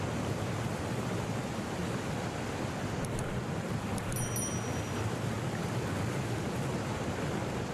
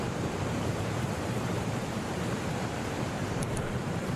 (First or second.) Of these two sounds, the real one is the first